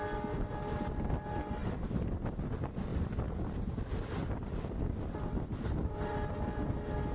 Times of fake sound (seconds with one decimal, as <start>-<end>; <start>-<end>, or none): 1.6-2.1; 2.9-5.9